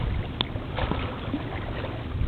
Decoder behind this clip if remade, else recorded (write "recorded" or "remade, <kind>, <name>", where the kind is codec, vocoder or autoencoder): recorded